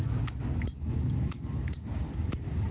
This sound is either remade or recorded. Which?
recorded